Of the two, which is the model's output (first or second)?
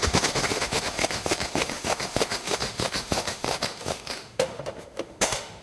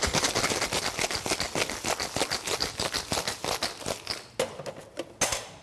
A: first